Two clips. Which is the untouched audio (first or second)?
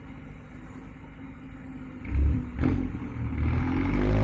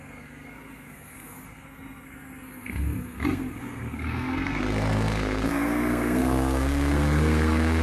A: first